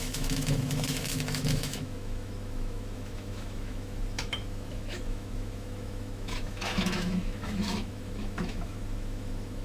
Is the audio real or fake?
fake